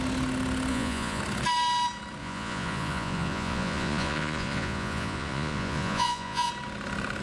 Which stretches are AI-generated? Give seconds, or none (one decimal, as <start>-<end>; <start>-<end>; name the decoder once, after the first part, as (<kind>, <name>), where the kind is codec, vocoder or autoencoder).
0.7-1.2 (vocoder, Vocos); 2.2-6.5